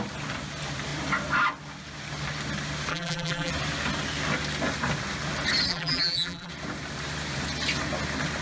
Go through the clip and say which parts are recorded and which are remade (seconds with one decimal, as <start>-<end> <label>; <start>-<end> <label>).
0.0-2.9 recorded; 2.9-3.5 remade; 3.5-5.7 recorded; 5.7-6.5 remade; 6.5-8.4 recorded